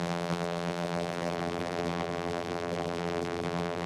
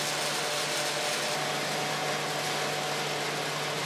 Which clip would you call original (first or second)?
second